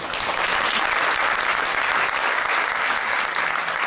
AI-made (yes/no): no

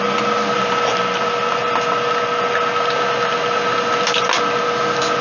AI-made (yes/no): no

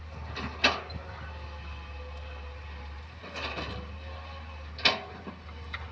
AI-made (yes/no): no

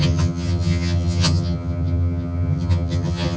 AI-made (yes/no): yes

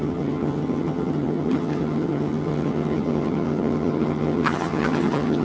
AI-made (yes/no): yes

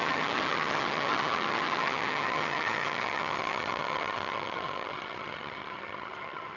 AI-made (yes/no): yes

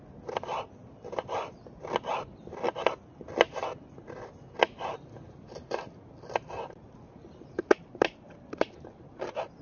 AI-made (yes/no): no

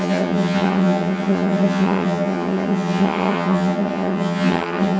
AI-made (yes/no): yes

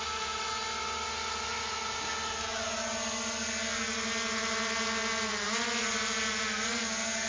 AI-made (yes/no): no